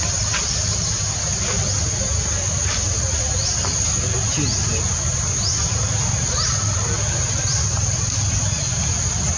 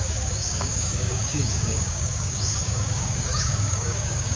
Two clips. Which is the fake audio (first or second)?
second